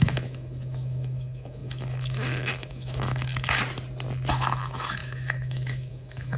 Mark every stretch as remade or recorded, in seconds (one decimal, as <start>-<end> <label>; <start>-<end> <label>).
0.0-3.6 remade; 3.6-4.3 recorded; 4.3-6.4 remade